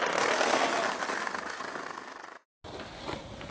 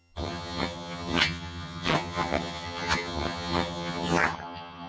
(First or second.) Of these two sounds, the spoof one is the second